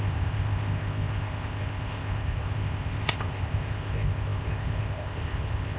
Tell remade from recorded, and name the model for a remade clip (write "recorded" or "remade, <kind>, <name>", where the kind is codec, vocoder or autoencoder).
remade, codec, ZipCodec